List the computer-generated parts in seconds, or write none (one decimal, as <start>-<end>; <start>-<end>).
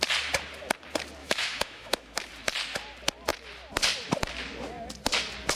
1.2-2.3